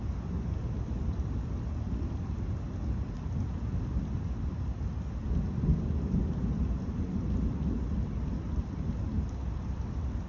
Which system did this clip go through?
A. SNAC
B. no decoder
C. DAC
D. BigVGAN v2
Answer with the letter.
B